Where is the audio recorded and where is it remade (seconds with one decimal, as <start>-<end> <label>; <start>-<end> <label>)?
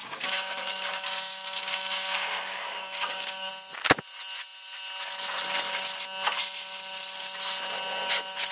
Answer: 0.0-3.5 remade; 3.5-8.5 recorded